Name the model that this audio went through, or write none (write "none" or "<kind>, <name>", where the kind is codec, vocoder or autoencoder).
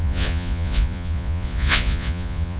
vocoder, Vocos